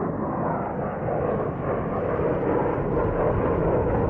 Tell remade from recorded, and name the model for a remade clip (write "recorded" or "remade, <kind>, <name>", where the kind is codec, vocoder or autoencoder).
recorded